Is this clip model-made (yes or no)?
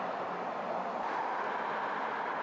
yes